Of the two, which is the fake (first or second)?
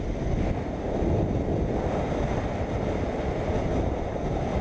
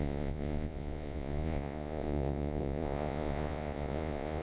second